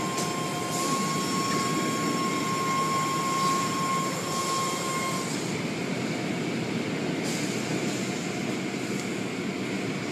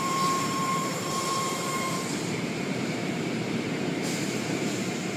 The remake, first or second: second